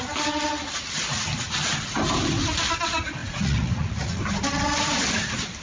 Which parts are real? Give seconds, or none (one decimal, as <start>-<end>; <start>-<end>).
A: 0.0-3.2; 4.2-5.6

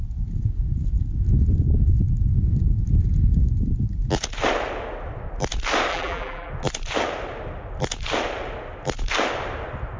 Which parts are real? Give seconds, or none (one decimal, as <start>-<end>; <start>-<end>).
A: 0.0-5.9; 6.5-10.0

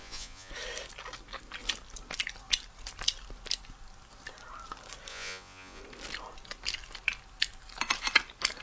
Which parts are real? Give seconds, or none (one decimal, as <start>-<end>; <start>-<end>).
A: 0.5-5.1; 5.8-8.6

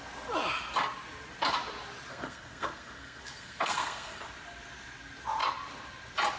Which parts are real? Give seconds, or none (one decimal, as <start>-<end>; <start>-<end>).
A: 0.0-2.1; 4.2-6.4

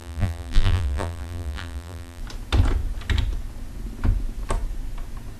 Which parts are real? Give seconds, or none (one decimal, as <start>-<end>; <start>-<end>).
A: 2.2-5.4

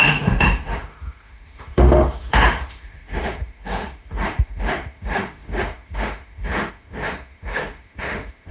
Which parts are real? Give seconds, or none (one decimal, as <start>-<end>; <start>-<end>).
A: none

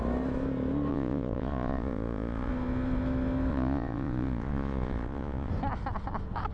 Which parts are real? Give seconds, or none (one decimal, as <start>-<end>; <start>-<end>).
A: 0.0-0.9; 2.5-3.5; 5.5-6.5

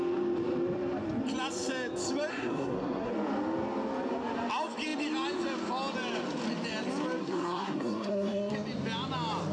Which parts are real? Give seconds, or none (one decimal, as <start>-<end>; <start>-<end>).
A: 0.0-2.3; 3.1-7.2; 8.5-9.5